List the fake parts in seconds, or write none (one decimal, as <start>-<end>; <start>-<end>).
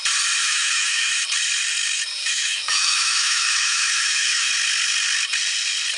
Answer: 0.4-1.1; 2.2-4.5